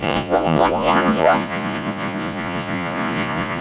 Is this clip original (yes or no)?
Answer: no